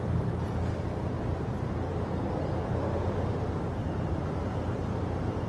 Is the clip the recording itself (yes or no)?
yes